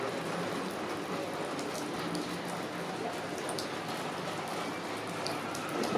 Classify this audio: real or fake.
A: real